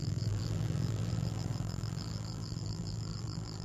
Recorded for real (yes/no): no